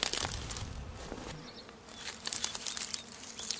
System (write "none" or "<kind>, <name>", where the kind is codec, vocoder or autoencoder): none